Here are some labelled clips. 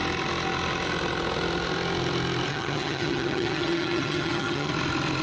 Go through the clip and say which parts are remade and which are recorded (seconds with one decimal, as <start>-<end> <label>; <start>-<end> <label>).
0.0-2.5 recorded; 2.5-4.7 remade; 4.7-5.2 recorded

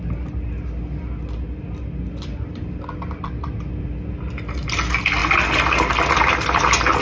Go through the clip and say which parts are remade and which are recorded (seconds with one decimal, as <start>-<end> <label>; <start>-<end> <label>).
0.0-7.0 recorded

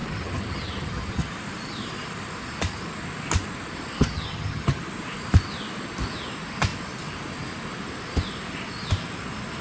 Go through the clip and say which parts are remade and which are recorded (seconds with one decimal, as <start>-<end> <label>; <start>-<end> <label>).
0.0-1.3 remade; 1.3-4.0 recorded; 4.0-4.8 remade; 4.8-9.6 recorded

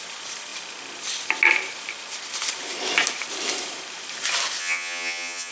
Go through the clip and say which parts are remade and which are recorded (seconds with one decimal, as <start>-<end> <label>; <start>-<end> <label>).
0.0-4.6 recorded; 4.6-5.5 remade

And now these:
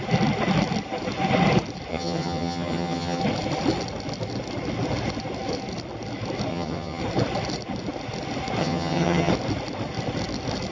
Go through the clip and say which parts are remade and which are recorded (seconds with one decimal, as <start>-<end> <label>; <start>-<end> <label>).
0.0-1.9 recorded; 1.9-3.2 remade; 3.2-6.5 recorded; 6.5-7.0 remade; 7.0-8.6 recorded; 8.6-9.3 remade; 9.3-10.7 recorded